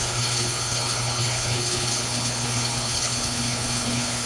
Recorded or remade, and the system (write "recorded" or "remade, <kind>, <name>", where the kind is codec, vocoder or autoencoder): remade, codec, HILCodec